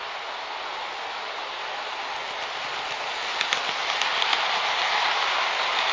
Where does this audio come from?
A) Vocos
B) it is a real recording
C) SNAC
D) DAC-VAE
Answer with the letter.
B